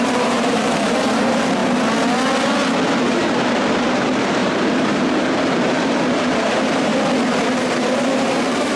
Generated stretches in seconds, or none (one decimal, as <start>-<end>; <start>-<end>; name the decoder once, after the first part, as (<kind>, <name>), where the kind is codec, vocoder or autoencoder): 0.0-1.6 (vocoder, BigVGAN v2); 3.0-6.9; 7.6-8.8